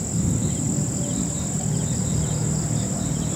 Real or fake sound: real